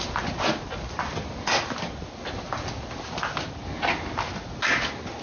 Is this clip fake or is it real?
real